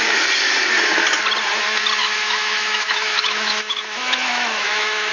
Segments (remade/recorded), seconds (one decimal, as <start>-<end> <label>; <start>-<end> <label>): 0.0-2.0 recorded; 2.0-5.1 remade